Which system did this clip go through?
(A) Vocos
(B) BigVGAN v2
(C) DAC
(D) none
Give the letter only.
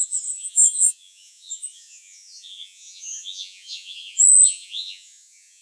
A